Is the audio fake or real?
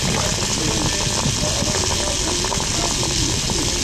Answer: real